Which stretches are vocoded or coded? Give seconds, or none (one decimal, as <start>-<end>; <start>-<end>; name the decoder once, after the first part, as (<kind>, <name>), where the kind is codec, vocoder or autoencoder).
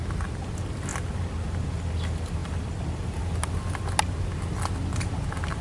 none